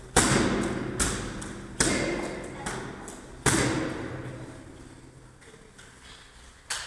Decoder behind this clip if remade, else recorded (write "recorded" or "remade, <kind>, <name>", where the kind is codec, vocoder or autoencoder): recorded